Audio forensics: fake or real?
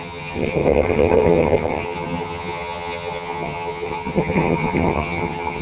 fake